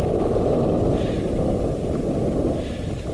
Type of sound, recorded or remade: remade